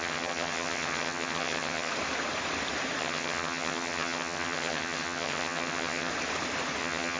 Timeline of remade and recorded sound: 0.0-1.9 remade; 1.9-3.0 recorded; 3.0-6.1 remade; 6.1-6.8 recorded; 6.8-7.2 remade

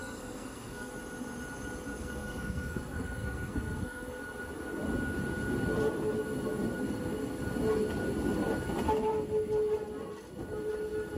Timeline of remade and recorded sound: 0.0-0.9 remade; 0.9-1.9 recorded; 1.9-4.2 remade; 4.2-11.2 recorded